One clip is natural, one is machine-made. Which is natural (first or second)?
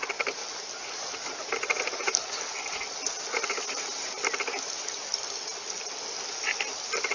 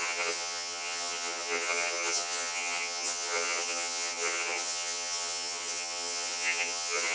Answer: first